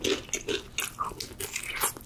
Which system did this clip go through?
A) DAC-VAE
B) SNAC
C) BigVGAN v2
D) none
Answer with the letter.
D